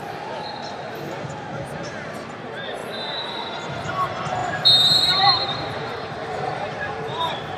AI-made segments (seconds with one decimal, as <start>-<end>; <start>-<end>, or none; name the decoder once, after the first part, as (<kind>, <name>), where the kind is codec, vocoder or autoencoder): 2.8-3.7 (vocoder, BigVGAN v2); 4.4-7.6